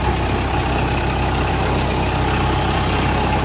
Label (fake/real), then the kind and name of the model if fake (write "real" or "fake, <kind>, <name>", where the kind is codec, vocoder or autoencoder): real